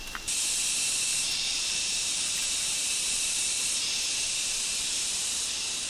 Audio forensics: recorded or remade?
remade